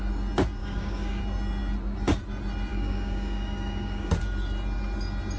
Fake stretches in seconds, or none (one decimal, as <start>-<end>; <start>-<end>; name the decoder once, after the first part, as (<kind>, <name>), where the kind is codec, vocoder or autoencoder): 0.6-1.2 (codec, DAC); 2.7-4.1